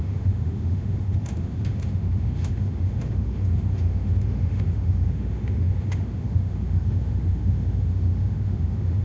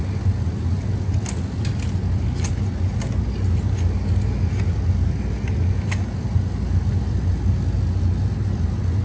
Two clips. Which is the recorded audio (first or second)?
second